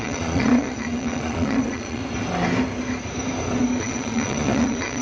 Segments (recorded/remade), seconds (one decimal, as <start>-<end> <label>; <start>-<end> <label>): 0.0-2.0 remade; 2.0-3.8 recorded; 3.8-5.0 remade